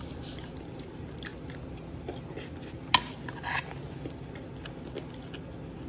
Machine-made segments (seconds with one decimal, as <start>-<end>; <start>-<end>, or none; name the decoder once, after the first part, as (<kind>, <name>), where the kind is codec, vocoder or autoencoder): none